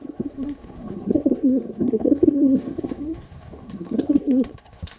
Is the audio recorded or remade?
remade